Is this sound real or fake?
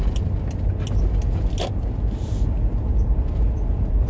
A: real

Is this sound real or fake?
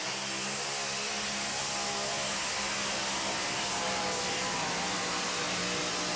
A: real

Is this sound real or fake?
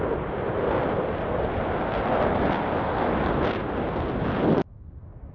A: real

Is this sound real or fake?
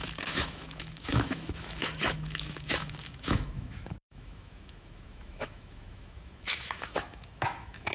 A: fake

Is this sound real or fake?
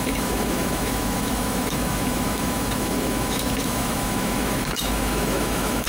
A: fake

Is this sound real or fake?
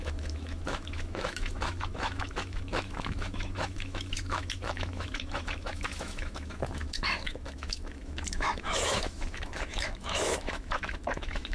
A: fake